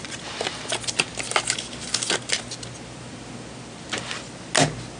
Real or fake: real